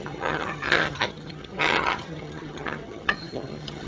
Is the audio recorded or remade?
remade